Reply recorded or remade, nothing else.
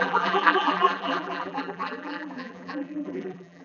remade